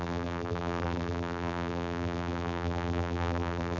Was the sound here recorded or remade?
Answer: remade